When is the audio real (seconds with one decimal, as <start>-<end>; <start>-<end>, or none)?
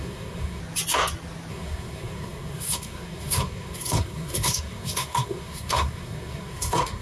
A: 0.6-1.5